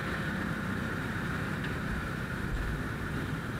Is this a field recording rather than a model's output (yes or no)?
no